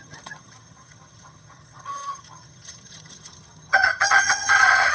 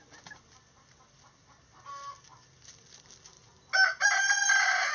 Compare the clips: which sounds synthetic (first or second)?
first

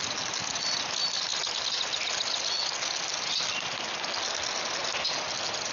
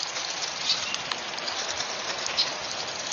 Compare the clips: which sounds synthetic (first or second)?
second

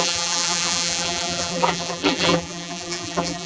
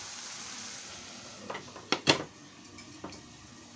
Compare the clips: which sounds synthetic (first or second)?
first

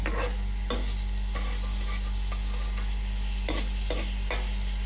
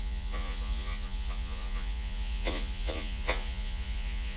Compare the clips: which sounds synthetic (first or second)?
second